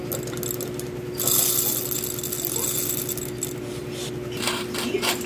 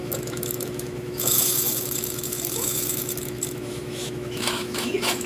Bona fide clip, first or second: first